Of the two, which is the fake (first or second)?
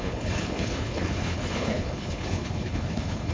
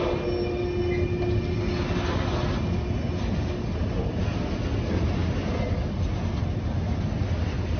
first